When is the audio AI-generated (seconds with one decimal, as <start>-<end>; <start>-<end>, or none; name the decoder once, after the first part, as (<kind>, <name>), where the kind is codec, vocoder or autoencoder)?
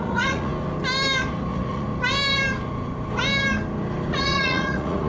0.0-0.5 (vocoder, Vocos); 1.5-1.9; 4.1-5.1